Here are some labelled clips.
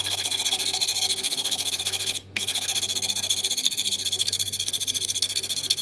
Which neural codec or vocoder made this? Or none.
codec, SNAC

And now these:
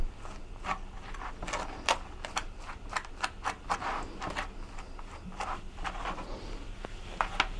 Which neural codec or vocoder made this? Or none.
none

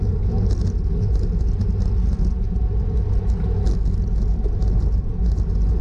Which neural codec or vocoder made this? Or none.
none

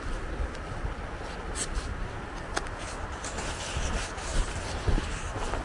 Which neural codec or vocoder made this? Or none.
none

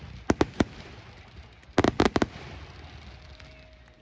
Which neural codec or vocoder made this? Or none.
none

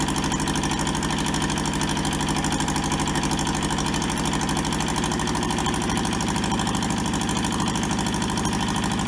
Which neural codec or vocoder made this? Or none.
none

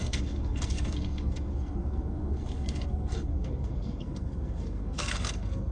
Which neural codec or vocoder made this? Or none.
codec, SNAC